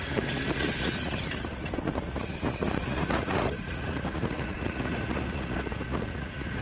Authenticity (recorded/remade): remade